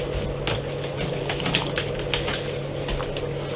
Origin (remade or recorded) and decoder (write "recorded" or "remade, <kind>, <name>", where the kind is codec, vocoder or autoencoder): recorded